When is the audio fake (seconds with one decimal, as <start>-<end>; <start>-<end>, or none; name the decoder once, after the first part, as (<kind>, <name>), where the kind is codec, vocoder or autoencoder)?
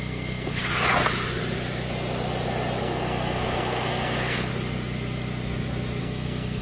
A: 0.0-0.6 (codec, SNAC); 2.8-4.5; 6.0-6.6